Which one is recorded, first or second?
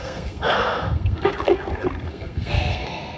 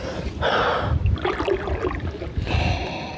second